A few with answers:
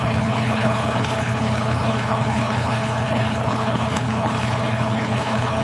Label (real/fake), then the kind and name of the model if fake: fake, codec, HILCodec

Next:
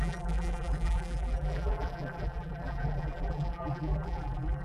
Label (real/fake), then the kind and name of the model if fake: fake, vocoder, BigVGAN v2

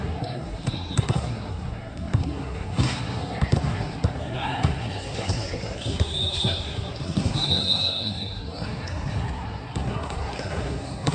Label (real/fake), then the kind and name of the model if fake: fake, codec, SNAC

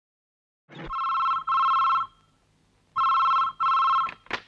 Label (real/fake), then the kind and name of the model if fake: real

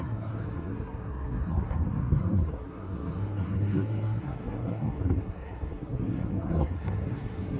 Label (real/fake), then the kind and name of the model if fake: fake, codec, SNAC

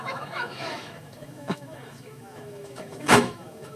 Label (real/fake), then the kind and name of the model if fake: fake, autoencoder, DAC-VAE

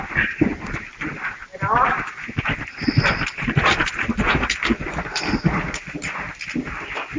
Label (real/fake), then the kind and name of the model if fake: real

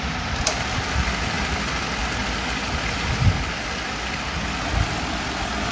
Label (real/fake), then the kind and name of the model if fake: real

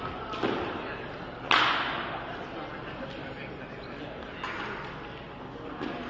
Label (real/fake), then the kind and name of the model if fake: real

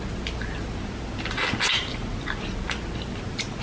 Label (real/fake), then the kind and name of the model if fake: real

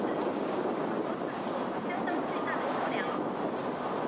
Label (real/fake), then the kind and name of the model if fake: real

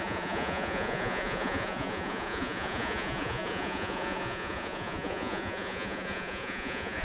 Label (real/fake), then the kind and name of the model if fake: fake, vocoder, Vocos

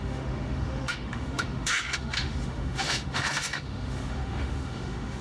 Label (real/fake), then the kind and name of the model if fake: fake, autoencoder, DAC-VAE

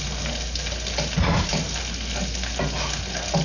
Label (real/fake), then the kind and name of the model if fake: real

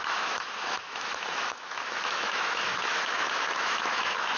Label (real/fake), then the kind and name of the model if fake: fake, autoencoder, DAC-VAE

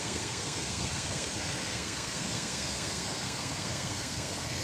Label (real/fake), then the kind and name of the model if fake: fake, codec, SNAC